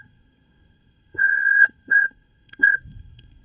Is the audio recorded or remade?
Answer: remade